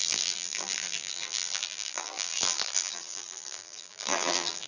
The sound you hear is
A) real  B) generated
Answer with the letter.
B